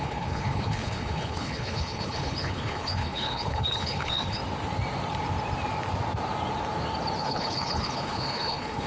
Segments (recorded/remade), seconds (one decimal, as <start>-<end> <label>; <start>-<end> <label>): 0.0-4.4 remade; 4.4-7.2 recorded; 7.2-8.9 remade